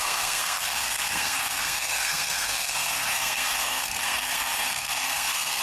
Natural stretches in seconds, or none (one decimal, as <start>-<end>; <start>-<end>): none